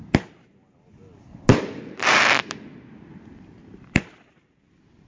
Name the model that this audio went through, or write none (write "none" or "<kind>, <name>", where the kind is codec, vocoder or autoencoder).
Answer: none